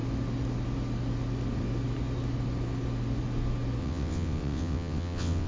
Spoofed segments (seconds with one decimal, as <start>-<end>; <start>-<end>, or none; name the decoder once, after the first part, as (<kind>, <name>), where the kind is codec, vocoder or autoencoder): 3.8-5.5 (vocoder, WaveNeXt)